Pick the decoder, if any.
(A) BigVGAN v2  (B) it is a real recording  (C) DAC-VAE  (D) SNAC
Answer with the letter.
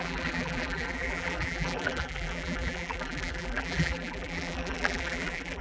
A